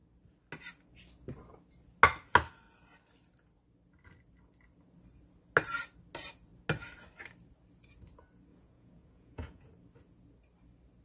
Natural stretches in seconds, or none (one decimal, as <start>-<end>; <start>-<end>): 0.0-8.5; 9.7-11.0